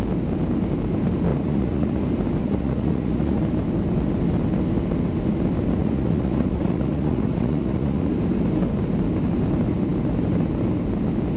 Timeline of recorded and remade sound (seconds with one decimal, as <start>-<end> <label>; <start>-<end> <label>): 0.0-1.3 recorded; 1.3-2.0 remade; 2.0-2.4 recorded; 2.4-3.4 remade; 3.4-5.8 recorded; 5.8-8.1 remade; 8.1-11.4 recorded